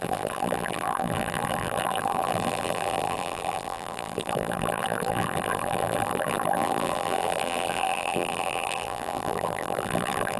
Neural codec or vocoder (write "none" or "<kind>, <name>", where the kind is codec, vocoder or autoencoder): vocoder, BigVGAN v2